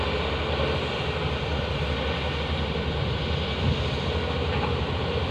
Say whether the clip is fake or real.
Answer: fake